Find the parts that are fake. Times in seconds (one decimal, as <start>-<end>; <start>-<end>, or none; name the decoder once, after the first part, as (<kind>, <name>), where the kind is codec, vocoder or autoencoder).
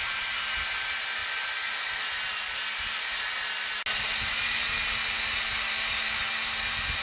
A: none